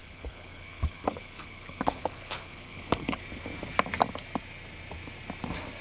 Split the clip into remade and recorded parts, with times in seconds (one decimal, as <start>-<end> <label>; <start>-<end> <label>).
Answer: 0.0-3.2 remade; 3.2-5.8 recorded